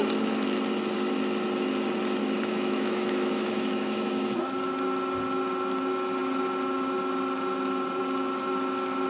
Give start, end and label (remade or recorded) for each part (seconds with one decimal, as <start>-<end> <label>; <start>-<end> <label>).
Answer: 0.0-2.2 recorded; 2.2-4.4 remade; 4.4-9.1 recorded

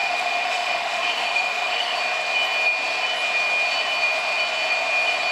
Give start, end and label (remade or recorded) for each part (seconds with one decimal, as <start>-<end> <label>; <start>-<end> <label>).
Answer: 0.0-2.0 remade; 2.0-5.3 recorded

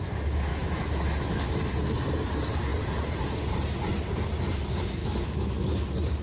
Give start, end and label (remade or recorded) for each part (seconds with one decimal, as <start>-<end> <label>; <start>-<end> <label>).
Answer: 0.0-0.5 recorded; 0.5-1.5 remade; 1.5-5.0 recorded; 5.0-5.5 remade; 5.5-6.2 recorded

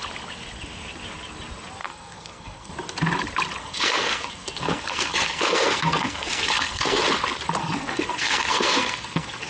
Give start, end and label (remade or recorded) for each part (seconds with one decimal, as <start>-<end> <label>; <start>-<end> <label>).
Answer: 0.0-1.8 recorded; 1.8-2.7 remade; 2.7-3.6 recorded; 3.6-7.0 remade; 7.0-7.6 recorded; 7.6-9.5 remade